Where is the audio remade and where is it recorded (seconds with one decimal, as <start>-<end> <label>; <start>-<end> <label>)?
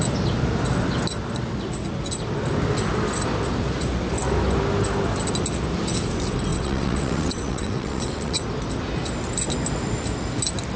0.0-6.5 recorded; 6.5-8.4 remade; 8.4-10.8 recorded